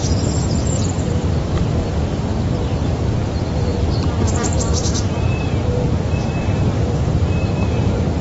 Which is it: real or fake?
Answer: fake